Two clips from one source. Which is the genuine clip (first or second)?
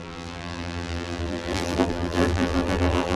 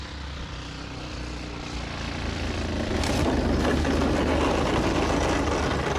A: second